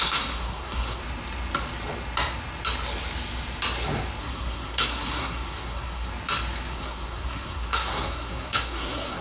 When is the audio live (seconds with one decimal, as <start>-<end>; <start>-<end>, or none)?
1.0-4.2; 6.1-6.7